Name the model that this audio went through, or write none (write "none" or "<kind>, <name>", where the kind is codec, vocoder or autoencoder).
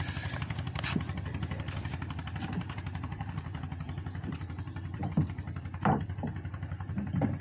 vocoder, BigVGAN v2